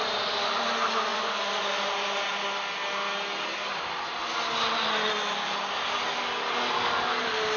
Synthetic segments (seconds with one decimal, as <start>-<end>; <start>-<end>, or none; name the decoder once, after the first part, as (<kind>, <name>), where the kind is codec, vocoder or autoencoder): none